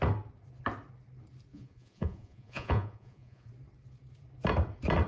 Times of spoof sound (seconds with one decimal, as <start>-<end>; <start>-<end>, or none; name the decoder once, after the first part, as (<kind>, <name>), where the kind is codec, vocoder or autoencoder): 1.5-3.5 (vocoder, Vocos)